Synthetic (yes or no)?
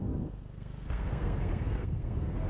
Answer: yes